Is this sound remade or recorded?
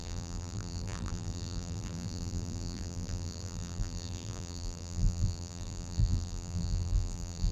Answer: remade